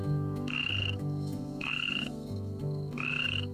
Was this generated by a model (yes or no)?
yes